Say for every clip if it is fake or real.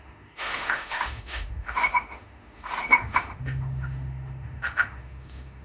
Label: fake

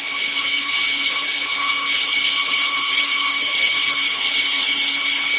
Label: fake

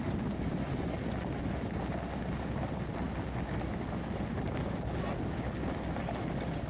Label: real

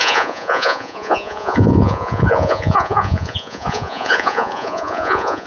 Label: fake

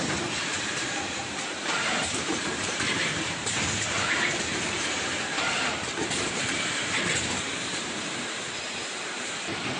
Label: fake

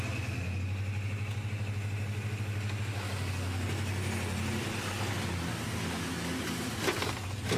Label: real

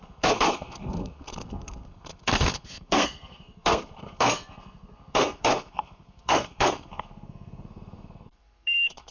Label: fake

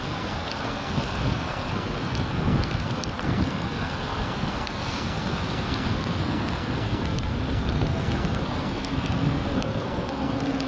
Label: fake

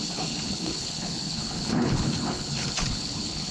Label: fake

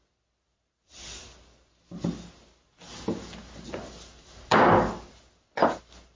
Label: real